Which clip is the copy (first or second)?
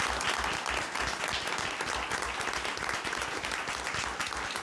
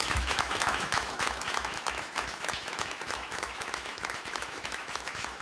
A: second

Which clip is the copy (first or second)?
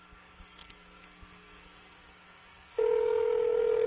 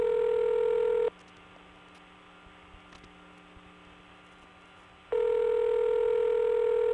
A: first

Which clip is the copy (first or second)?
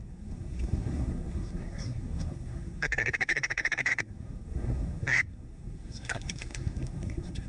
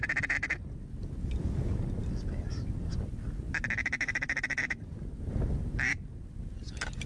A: first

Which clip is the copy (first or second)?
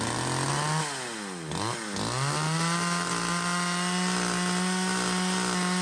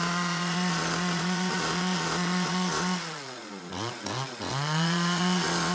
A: second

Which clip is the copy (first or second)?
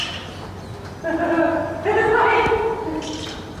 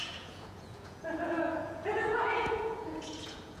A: second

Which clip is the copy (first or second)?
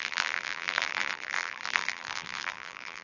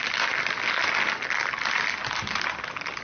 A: first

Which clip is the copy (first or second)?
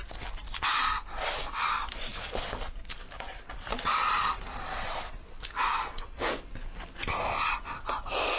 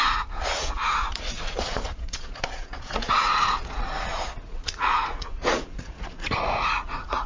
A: second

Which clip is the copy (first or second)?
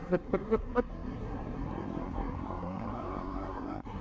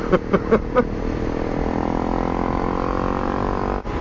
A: first